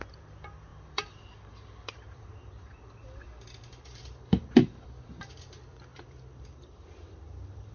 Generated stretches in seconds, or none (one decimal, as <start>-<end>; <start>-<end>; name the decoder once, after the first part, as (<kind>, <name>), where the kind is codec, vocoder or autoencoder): 0.7-5.3 (vocoder, BigVGAN v2); 5.9-7.7